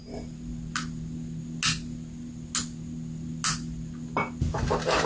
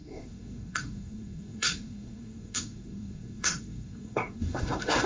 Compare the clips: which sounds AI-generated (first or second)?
second